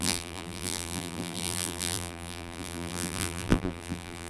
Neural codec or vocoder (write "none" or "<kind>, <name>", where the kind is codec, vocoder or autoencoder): vocoder, BigVGAN v2